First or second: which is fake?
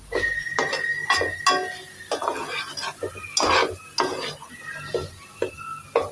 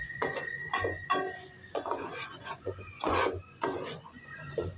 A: second